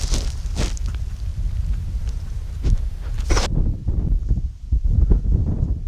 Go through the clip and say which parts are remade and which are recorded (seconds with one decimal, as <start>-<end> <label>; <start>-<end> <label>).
0.0-1.3 remade; 1.3-4.2 recorded; 4.2-5.9 remade